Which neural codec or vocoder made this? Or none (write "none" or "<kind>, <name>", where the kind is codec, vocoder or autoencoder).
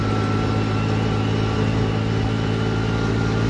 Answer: none